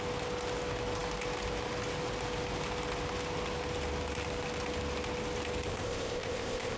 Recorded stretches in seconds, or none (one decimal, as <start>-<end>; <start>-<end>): 0.0-5.7